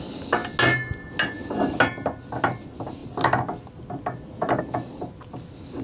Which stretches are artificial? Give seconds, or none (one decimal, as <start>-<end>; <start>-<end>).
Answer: none